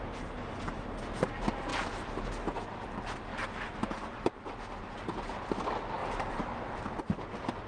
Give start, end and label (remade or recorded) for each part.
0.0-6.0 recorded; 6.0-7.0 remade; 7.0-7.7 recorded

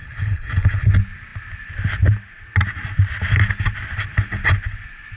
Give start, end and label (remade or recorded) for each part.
0.0-0.9 remade; 0.9-5.2 recorded

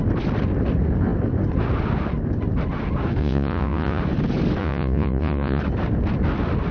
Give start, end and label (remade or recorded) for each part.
0.0-3.2 recorded; 3.2-4.0 remade; 4.0-4.6 recorded; 4.6-5.6 remade; 5.6-6.7 recorded

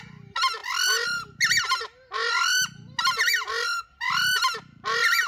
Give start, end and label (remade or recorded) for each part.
0.0-5.3 recorded

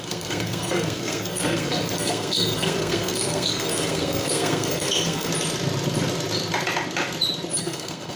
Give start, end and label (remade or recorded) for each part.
0.0-5.3 remade; 5.3-7.6 recorded; 7.6-8.2 remade

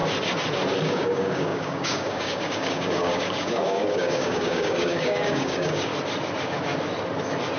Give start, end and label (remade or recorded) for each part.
0.0-0.8 recorded; 0.8-5.9 remade; 5.9-7.6 recorded

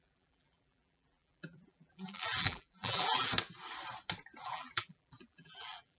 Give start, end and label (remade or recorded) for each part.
0.0-3.3 remade; 3.3-4.4 recorded; 4.4-6.0 remade